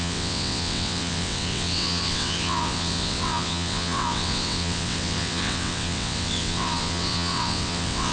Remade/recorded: remade